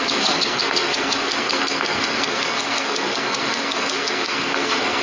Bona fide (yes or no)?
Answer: no